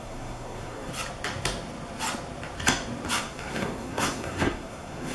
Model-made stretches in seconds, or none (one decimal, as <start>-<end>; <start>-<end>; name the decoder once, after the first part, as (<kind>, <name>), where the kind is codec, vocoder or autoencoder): 0.0-0.9 (codec, SNAC); 3.2-5.1